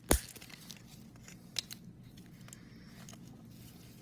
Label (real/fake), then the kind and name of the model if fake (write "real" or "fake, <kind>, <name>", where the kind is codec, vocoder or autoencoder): real